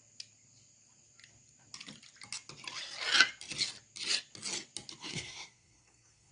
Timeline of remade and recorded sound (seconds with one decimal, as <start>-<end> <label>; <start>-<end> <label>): 0.0-5.0 recorded; 5.0-6.3 remade